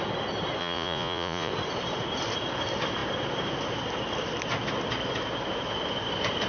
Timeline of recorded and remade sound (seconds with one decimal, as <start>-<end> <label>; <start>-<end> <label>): 0.0-0.6 recorded; 0.6-1.5 remade; 1.5-6.5 recorded